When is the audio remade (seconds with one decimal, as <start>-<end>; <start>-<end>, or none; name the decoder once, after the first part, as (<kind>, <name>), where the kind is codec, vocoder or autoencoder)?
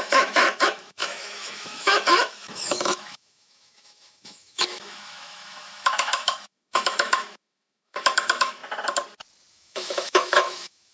0.0-8.6 (autoencoder, DAC-VAE); 9.5-10.9